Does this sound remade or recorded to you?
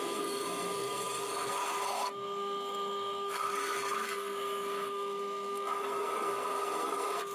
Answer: remade